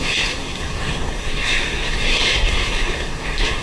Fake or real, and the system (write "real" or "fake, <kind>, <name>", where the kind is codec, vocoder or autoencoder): fake, codec, SNAC